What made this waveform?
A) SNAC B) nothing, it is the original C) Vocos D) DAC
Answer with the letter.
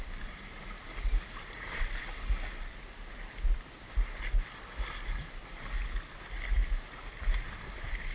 B